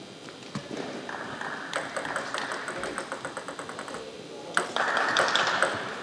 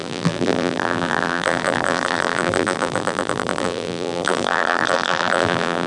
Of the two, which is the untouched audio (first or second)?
first